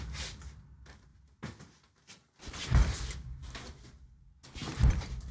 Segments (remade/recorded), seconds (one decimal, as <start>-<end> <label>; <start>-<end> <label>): 0.0-4.7 recorded; 4.7-5.3 remade